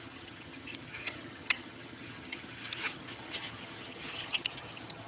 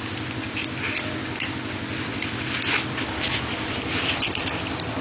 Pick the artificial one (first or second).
first